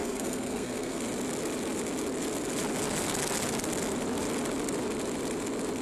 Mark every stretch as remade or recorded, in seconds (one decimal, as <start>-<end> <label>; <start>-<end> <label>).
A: 0.0-1.0 remade; 1.0-5.8 recorded